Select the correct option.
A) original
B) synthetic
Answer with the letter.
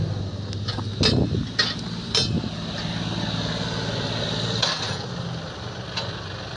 A